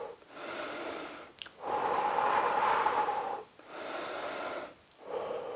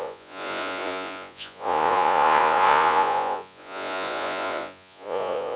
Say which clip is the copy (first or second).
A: second